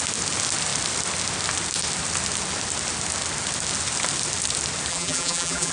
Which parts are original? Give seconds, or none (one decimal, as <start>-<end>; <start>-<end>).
0.0-4.9